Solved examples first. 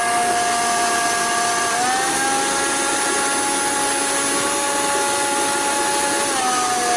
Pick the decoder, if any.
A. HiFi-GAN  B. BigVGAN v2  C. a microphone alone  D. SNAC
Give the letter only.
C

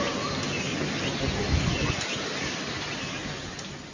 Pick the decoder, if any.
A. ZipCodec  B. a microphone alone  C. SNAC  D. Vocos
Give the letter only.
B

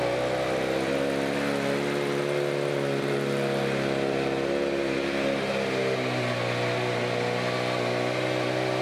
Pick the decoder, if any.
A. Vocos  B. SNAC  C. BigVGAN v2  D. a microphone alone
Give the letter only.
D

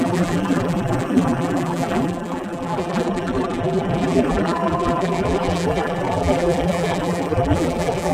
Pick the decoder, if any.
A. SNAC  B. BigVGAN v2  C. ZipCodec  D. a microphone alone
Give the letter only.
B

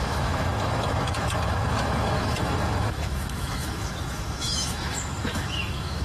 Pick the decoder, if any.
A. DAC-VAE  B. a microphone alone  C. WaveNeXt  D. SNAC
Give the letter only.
A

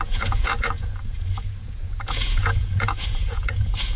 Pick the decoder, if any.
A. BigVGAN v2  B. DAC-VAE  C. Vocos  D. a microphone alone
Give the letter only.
C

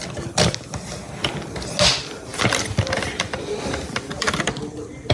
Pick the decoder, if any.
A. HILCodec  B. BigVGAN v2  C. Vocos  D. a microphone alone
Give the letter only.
D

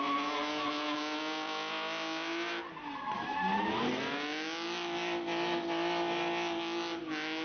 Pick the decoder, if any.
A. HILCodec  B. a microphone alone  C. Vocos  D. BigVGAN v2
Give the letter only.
B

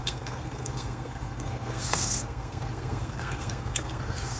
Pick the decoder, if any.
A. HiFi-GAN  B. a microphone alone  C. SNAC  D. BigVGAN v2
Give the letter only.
C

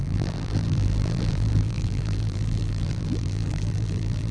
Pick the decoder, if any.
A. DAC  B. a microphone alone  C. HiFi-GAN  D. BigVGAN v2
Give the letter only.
D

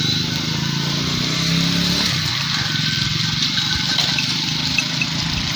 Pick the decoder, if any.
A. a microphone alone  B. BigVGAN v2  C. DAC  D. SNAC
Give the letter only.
A